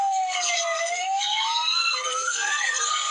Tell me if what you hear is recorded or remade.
remade